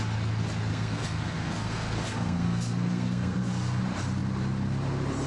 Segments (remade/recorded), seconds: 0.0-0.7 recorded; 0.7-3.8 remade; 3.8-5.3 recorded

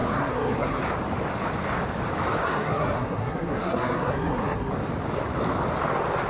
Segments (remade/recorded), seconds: 0.0-0.8 remade; 0.8-2.4 recorded; 2.4-4.7 remade; 4.7-6.3 recorded

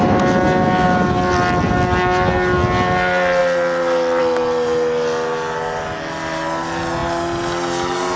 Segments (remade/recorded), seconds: 0.0-8.2 recorded

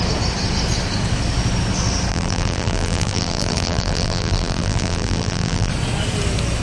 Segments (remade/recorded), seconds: 0.0-2.1 recorded; 2.1-5.7 remade; 5.7-6.6 recorded

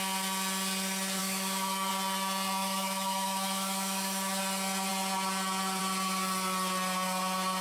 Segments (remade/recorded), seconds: 0.0-1.2 recorded; 1.2-1.9 remade; 1.9-2.6 recorded; 2.6-4.4 remade; 4.4-7.6 recorded

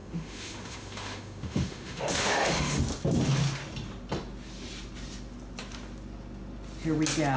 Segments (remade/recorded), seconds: 0.0-2.8 remade; 2.8-7.4 recorded

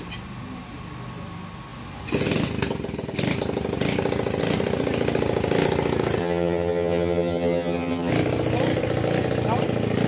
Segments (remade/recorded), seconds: 0.0-6.2 recorded; 6.2-8.1 remade; 8.1-10.1 recorded